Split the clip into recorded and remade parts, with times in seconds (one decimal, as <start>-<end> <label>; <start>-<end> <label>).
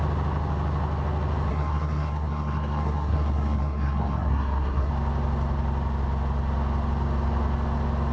0.0-1.5 recorded; 1.5-4.9 remade; 4.9-8.1 recorded